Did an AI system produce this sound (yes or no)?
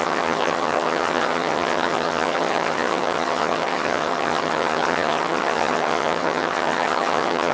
yes